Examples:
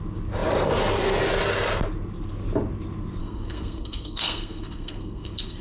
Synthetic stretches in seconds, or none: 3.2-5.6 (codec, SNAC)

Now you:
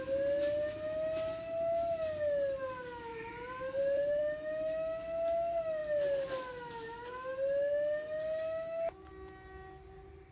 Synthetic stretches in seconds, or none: 3.1-4.2 (vocoder, BigVGAN v2)

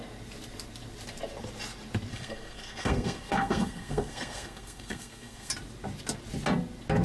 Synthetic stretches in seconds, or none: 2.1-5.5 (codec, SNAC)

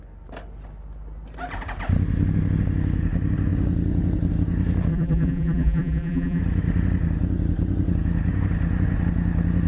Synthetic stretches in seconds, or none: 4.9-6.4 (vocoder, BigVGAN v2)